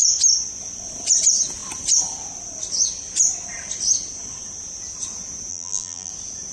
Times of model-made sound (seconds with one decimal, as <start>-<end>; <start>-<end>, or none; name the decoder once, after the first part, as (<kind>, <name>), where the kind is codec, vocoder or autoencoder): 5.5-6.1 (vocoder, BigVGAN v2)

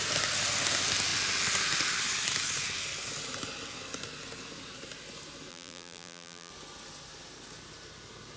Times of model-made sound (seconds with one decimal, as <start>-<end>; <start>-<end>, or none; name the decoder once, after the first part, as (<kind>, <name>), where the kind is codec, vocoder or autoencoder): 5.5-6.5 (vocoder, BigVGAN v2)

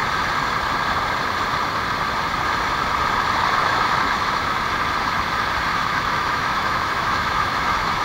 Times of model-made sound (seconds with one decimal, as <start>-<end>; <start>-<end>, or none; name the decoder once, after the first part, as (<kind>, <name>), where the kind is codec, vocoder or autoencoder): 3.6-4.6 (autoencoder, DAC-VAE); 5.7-8.0

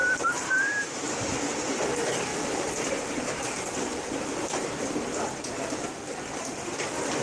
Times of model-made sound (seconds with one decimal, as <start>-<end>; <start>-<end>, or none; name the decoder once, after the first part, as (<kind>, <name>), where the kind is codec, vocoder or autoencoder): 0.0-1.4 (vocoder, BigVGAN v2); 2.3-6.0

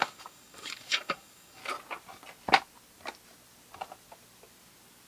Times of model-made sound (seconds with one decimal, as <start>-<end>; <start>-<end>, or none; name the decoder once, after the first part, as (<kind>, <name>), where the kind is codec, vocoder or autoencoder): 0.0-1.6 (codec, DAC)

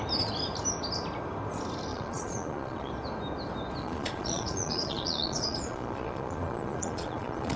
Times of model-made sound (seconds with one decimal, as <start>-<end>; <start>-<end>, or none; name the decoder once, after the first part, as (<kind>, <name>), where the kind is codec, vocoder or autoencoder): 1.9-2.9 (vocoder, Vocos); 3.8-7.6

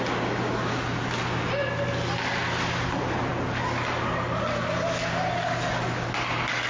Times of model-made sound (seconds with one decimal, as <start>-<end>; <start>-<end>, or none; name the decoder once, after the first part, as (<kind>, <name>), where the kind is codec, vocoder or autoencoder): none